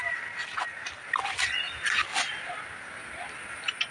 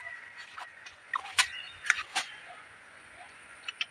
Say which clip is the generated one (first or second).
second